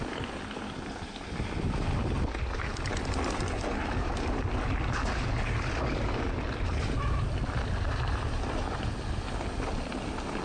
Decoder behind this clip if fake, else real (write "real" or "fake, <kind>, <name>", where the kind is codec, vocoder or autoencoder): real